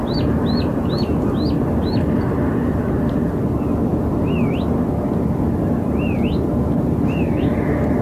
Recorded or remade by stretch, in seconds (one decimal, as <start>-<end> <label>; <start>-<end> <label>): 0.0-8.0 recorded